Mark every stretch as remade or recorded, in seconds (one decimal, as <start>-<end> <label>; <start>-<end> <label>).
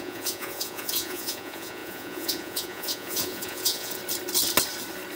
0.0-4.0 remade; 4.0-5.2 recorded